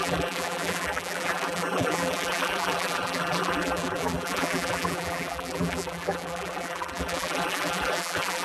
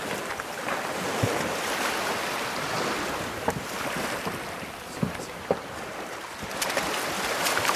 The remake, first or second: first